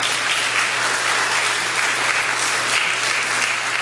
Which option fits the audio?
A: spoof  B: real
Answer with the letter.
B